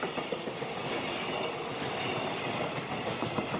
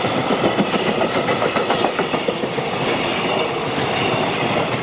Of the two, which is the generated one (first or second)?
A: second